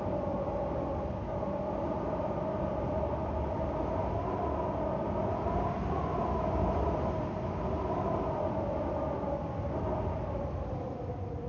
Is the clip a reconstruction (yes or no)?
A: no